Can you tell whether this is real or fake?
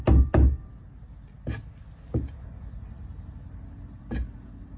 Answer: real